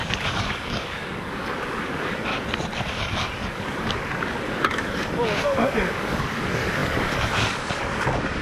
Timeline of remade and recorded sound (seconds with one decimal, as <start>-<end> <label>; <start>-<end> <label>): 0.0-2.3 remade; 2.3-2.9 recorded; 2.9-8.4 remade